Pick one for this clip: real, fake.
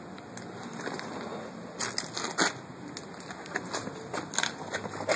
real